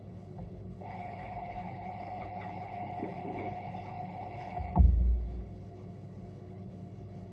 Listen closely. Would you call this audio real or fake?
fake